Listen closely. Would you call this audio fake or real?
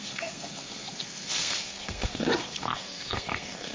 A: fake